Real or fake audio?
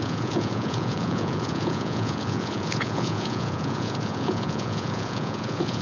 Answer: fake